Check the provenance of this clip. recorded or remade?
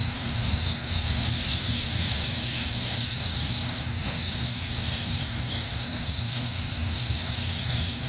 remade